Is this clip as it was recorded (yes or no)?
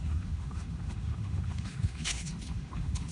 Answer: no